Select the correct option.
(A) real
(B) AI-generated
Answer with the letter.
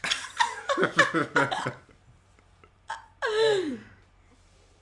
B